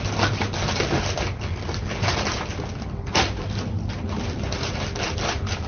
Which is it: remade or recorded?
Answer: recorded